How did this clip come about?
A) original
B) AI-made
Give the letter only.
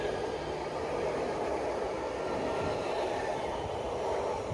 A